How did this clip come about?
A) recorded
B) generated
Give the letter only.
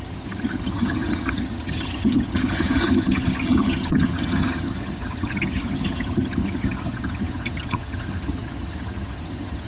B